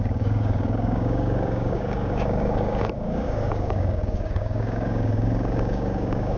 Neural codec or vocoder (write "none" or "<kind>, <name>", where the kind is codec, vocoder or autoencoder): codec, DAC